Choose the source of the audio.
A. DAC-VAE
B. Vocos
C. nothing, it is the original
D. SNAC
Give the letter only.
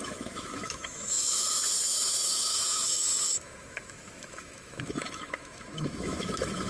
A